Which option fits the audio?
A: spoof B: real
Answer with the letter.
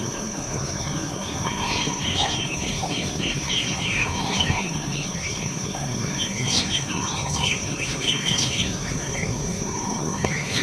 A